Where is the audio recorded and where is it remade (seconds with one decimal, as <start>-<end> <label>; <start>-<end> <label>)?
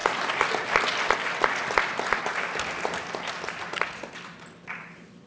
0.0-5.3 recorded